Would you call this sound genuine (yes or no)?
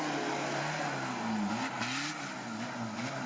yes